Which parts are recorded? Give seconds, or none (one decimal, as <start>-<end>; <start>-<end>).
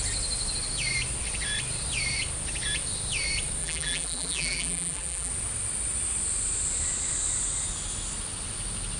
0.0-3.6; 5.3-9.0